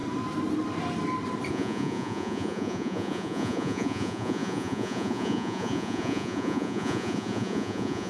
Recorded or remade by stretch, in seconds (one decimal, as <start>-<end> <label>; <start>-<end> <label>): 0.0-1.5 recorded; 1.5-8.1 remade